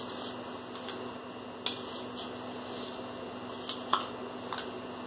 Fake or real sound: real